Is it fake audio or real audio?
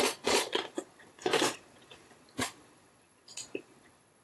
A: fake